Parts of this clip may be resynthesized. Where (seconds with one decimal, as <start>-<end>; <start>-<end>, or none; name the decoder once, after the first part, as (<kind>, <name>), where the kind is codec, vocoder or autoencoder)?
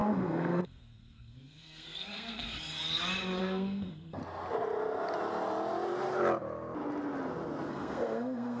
0.0-2.5 (codec, SNAC); 3.4-4.2; 7.7-8.6